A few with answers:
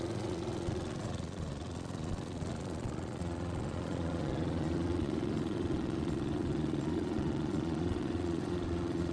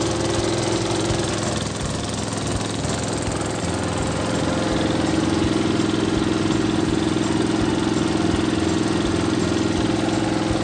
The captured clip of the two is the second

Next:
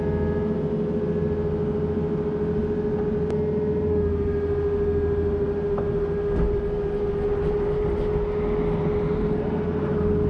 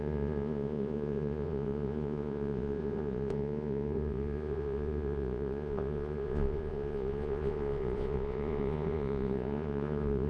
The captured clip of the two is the first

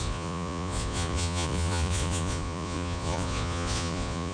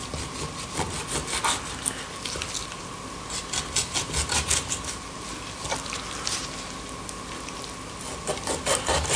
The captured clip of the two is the second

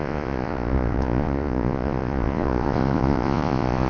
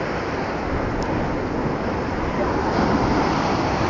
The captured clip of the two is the second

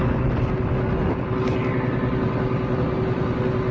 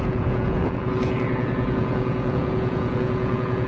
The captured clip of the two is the first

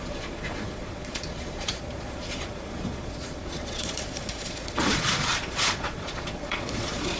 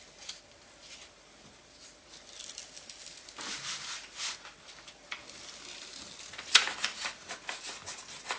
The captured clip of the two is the second